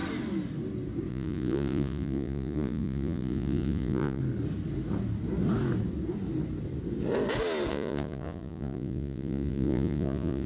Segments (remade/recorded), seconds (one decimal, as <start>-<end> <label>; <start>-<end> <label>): 0.0-1.1 recorded; 1.1-4.2 remade; 4.2-7.7 recorded; 7.7-10.5 remade